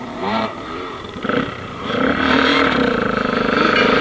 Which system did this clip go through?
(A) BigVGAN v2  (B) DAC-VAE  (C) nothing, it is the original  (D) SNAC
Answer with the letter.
A